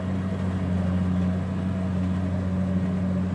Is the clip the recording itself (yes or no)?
yes